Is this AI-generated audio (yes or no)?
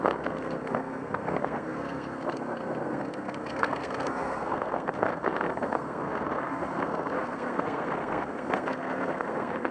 yes